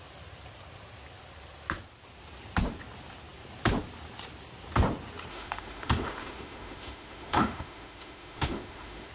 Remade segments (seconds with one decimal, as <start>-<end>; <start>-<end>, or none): 5.3-9.1